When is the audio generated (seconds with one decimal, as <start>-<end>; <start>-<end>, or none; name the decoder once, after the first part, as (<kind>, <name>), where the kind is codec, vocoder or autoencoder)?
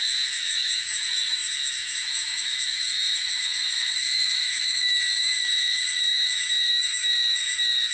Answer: 0.0-7.9 (autoencoder, DAC-VAE)